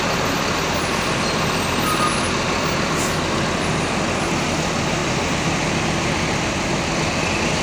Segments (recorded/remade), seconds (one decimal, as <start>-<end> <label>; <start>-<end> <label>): 0.0-7.6 recorded